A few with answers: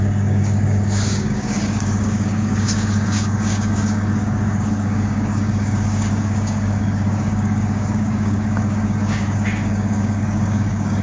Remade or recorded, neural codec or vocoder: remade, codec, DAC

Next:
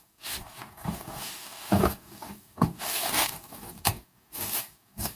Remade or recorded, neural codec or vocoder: remade, codec, DAC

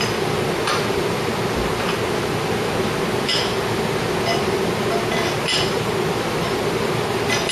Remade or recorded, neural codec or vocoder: recorded